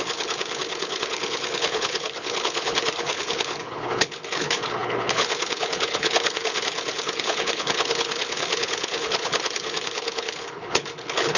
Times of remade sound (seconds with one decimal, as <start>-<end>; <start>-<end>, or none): 0.0-11.4